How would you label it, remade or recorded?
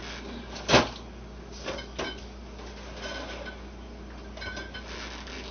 recorded